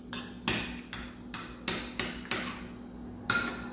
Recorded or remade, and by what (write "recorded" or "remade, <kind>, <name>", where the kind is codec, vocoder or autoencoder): recorded